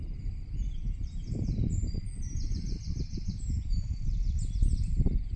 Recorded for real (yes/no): no